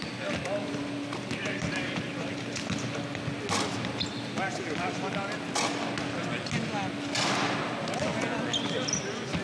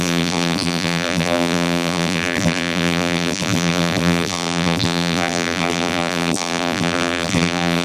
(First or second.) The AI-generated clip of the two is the second